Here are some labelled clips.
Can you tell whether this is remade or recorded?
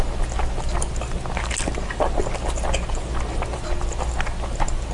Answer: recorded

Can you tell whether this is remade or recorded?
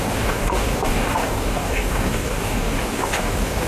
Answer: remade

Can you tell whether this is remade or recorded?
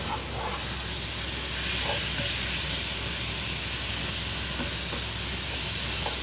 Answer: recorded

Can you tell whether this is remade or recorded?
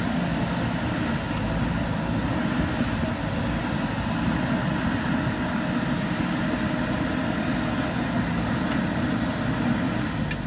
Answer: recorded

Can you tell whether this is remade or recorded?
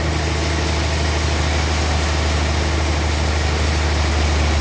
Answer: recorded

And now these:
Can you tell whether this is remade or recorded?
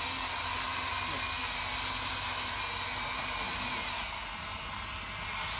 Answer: recorded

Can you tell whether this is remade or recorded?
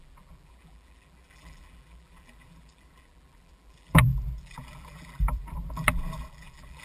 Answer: remade